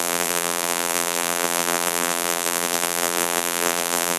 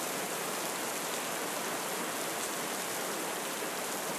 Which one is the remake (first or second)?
first